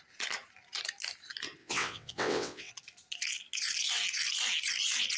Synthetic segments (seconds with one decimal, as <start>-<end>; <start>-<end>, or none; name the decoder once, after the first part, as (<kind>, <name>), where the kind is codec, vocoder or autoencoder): 1.6-2.7 (vocoder, WaveNeXt)